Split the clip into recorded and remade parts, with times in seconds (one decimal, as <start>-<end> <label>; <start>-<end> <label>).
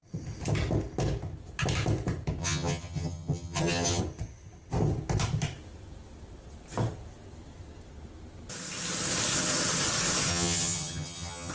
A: 0.0-2.4 recorded; 2.4-4.0 remade; 4.0-10.3 recorded; 10.3-11.5 remade